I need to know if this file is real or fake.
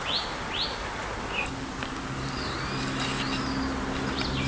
real